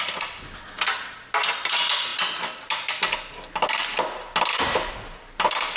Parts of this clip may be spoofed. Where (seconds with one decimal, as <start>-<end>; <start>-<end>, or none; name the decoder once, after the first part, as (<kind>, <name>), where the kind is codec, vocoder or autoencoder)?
none